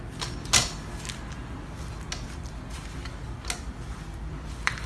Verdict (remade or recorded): recorded